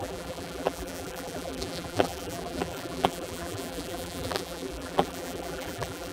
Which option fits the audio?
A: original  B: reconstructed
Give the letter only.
B